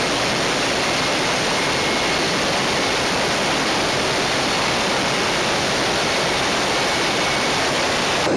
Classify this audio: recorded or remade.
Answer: recorded